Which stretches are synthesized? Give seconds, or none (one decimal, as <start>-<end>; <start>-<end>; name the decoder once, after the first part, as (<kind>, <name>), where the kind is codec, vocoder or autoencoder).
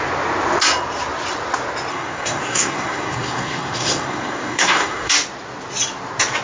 1.9-5.1 (codec, SNAC)